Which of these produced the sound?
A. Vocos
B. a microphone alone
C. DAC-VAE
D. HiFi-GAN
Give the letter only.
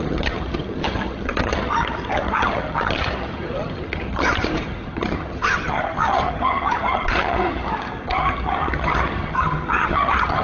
D